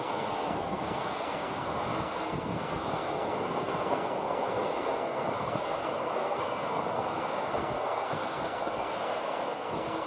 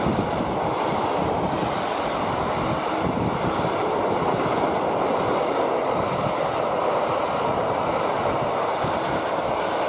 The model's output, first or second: first